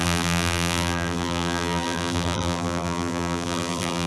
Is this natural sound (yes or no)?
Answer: no